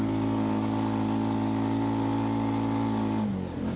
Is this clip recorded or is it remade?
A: recorded